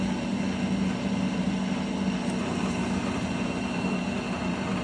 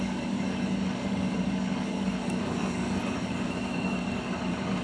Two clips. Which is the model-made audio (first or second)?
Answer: second